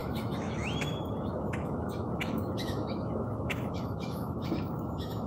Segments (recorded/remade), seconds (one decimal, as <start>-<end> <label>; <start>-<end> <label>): 0.0-5.3 remade